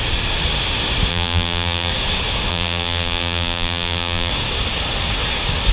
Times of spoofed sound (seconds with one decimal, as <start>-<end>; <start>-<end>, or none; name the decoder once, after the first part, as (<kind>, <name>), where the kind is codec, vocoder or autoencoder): 1.1-1.9 (vocoder, BigVGAN v2); 2.5-4.3